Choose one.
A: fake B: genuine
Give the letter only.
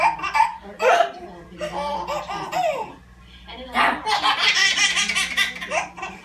B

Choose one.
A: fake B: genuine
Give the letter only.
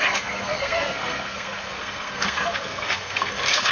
A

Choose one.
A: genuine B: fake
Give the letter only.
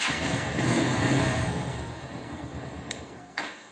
B